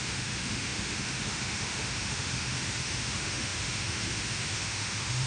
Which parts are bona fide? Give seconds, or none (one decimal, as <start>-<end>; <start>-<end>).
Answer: none